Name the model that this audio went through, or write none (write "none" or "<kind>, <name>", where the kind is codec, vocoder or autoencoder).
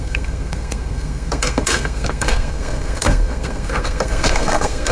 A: codec, SNAC